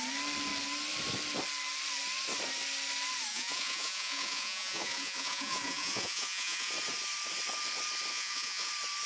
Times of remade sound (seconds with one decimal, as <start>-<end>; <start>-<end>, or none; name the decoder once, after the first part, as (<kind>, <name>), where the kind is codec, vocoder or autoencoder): 3.3-6.7 (vocoder, Vocos); 8.1-8.7